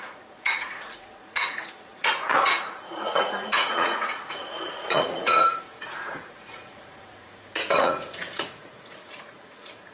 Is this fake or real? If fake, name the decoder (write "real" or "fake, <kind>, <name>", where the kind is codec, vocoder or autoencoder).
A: fake, vocoder, Vocos